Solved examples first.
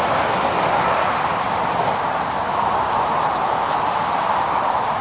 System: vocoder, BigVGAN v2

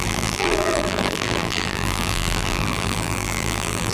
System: vocoder, BigVGAN v2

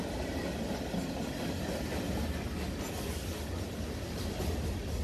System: none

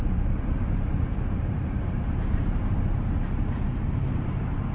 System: vocoder, BigVGAN v2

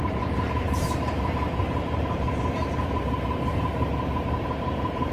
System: vocoder, BigVGAN v2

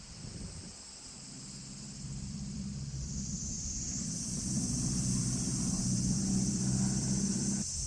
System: vocoder, BigVGAN v2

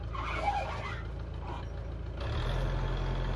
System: none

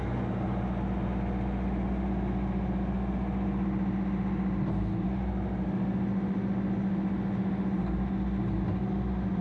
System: none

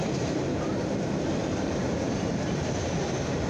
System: vocoder, BigVGAN v2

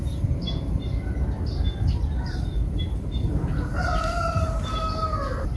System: vocoder, BigVGAN v2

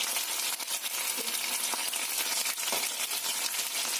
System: none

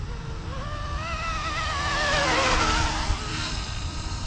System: vocoder, BigVGAN v2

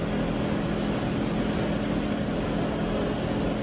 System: none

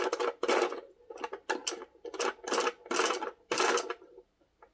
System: none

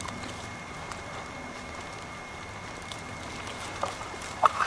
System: vocoder, BigVGAN v2